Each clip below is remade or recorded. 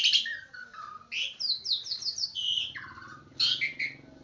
recorded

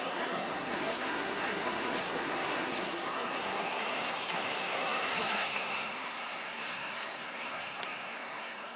remade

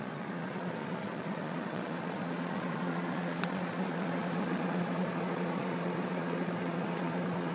remade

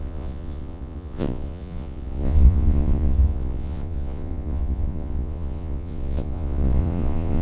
remade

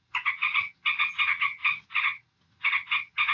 remade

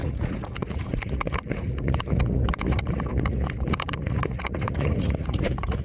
remade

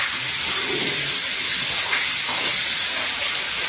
recorded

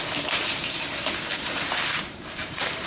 remade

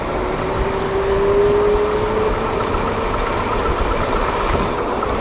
recorded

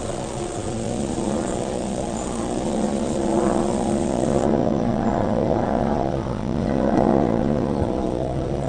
remade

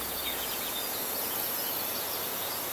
remade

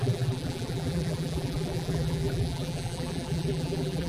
remade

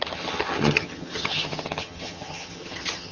remade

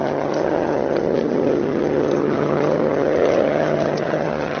remade